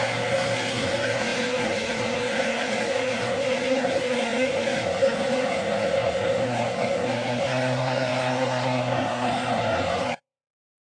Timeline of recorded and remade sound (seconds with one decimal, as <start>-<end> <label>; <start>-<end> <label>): 0.0-10.8 remade